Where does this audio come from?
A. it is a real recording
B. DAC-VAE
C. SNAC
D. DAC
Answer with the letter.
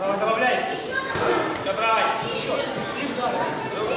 A